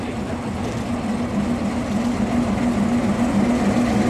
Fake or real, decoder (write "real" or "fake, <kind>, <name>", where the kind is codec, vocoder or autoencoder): real